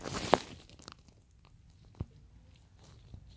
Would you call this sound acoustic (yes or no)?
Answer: yes